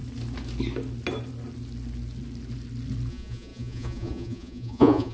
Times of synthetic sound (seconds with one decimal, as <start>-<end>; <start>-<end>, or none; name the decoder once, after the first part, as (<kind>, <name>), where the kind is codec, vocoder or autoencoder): 3.1-5.1 (vocoder, Vocos)